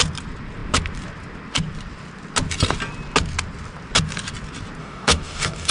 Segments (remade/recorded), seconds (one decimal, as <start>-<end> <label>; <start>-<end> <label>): 0.0-4.8 recorded; 4.8-5.7 remade